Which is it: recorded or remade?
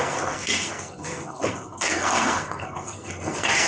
remade